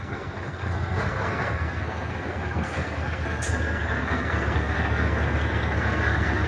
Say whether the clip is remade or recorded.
remade